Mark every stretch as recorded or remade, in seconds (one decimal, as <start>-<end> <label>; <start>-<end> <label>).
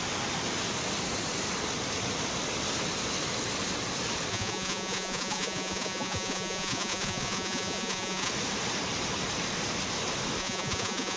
0.0-4.3 recorded; 4.3-8.3 remade; 8.3-10.4 recorded; 10.4-11.2 remade